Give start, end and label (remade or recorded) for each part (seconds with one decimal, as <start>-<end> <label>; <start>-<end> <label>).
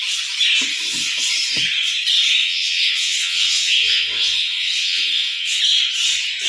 0.0-0.7 recorded; 0.7-1.3 remade; 1.3-2.4 recorded; 2.4-5.6 remade; 5.6-6.5 recorded